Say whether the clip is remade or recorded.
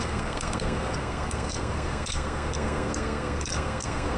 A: remade